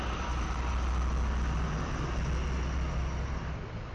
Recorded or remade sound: recorded